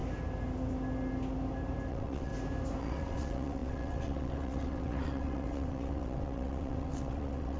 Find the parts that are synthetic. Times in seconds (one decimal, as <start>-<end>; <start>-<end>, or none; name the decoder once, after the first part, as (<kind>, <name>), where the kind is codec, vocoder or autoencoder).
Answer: 1.9-2.3 (vocoder, WaveNeXt); 2.8-7.6

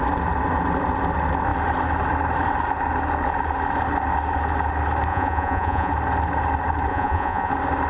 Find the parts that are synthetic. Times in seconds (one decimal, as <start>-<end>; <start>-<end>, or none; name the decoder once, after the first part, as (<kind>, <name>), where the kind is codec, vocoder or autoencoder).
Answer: 5.1-5.9 (vocoder, Vocos); 6.9-7.5